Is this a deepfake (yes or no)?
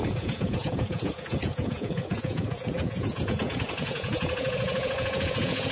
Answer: yes